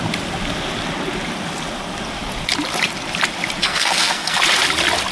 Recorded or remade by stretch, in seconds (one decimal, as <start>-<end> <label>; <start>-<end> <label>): 0.0-3.6 recorded; 3.6-4.4 remade; 4.4-5.1 recorded